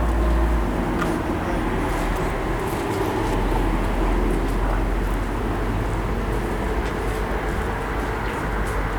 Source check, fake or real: real